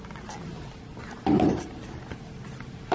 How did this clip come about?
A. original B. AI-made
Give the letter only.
A